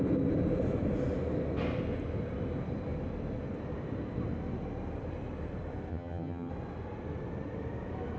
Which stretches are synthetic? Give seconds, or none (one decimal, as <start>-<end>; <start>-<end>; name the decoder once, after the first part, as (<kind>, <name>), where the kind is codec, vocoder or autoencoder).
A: 5.9-6.5 (vocoder, HiFi-GAN)